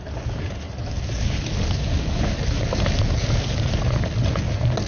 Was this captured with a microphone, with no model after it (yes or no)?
yes